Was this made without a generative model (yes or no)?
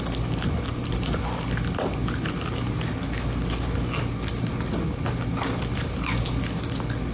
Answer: yes